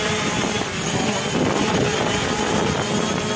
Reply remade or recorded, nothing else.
recorded